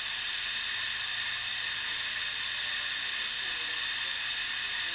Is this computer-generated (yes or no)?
no